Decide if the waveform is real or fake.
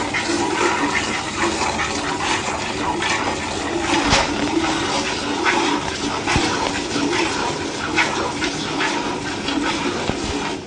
real